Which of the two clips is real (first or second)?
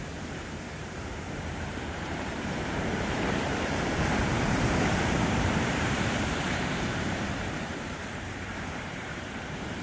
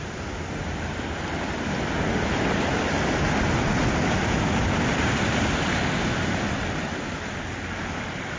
second